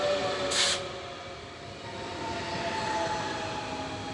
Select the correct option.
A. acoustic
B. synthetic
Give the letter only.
A